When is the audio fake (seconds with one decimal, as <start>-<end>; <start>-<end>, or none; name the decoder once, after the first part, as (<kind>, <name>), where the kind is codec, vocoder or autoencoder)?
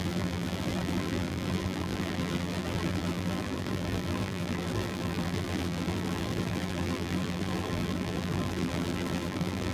0.0-9.7 (vocoder, BigVGAN v2)